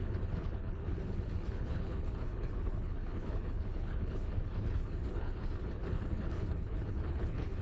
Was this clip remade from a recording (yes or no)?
yes